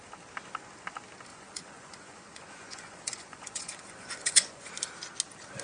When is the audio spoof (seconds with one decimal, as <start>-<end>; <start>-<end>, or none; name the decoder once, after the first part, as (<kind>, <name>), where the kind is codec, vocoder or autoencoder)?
1.3-4.7 (vocoder, Vocos)